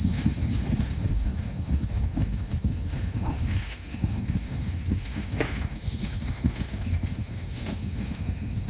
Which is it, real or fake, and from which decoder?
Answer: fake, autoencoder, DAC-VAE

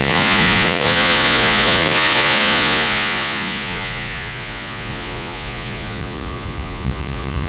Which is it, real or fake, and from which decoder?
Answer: fake, vocoder, Vocos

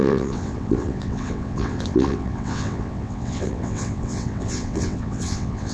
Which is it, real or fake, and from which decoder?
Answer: fake, vocoder, WaveNeXt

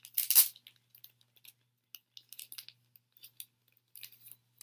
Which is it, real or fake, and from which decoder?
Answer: real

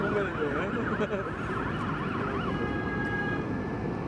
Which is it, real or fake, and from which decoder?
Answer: real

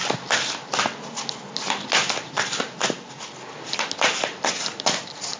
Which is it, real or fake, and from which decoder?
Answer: real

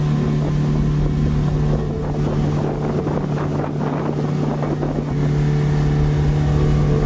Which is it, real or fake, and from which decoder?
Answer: real